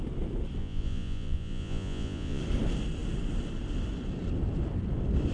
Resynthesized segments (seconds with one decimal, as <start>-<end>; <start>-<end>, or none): 0.6-2.4